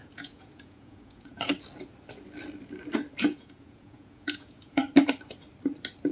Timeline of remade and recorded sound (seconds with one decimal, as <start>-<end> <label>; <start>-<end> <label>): 0.0-1.5 remade; 1.5-3.2 recorded; 3.2-4.8 remade; 4.8-6.1 recorded

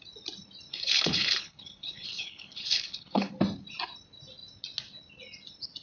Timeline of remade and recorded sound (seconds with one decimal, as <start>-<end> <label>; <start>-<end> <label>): 0.0-0.7 recorded; 0.7-3.3 remade; 3.3-5.8 recorded

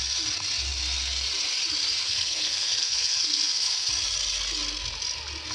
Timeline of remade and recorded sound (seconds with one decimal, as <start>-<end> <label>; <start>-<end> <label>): 0.0-2.0 recorded; 2.0-3.9 remade; 3.9-5.5 recorded

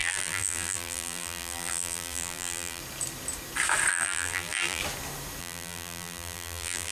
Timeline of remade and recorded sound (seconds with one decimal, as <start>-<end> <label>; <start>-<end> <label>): 0.0-2.8 remade; 2.8-3.9 recorded; 3.9-4.8 remade; 4.8-5.4 recorded; 5.4-6.9 remade

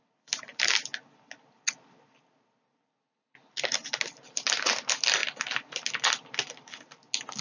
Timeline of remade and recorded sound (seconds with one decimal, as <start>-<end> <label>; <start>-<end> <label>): 0.0-7.4 recorded

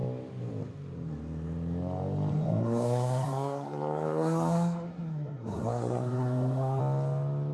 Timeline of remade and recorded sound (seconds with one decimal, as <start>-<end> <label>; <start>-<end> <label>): 0.0-2.3 recorded; 2.3-6.8 remade; 6.8-7.5 recorded

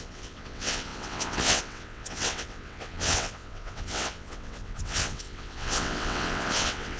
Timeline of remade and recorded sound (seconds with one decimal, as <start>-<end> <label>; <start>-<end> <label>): 0.0-7.0 remade

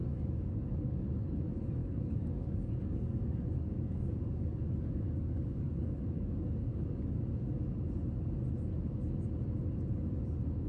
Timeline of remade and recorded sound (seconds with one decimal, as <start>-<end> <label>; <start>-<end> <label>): 0.0-1.0 remade; 1.0-1.8 recorded; 1.8-7.0 remade; 7.0-10.7 recorded